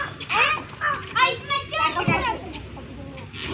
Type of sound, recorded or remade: recorded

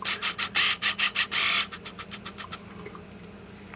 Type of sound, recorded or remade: recorded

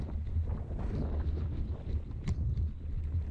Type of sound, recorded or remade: recorded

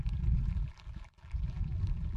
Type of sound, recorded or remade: remade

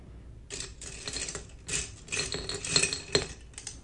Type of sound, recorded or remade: recorded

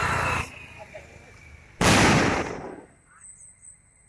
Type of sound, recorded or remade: recorded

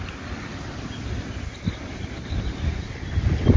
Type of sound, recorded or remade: recorded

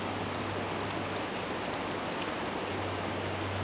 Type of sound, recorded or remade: recorded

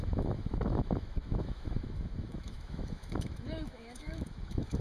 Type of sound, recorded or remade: remade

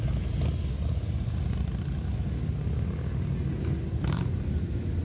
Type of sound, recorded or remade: recorded